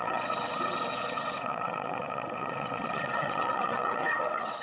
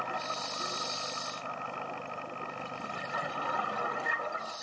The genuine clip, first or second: second